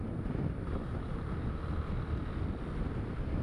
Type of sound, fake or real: real